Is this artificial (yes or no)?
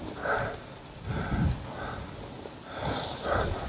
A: no